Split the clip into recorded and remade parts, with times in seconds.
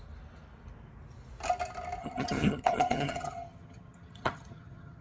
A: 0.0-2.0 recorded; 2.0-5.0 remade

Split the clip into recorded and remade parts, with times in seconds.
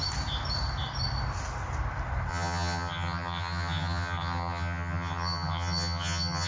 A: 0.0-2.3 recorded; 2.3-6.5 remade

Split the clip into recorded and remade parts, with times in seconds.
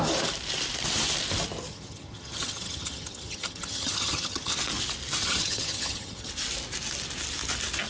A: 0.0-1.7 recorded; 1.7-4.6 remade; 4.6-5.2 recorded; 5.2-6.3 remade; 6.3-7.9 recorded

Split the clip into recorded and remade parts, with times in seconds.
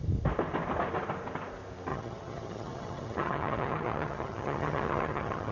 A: 0.0-1.9 recorded; 1.9-5.5 remade